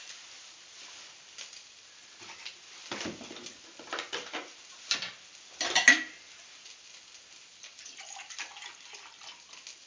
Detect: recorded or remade recorded